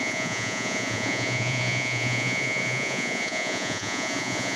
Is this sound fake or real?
fake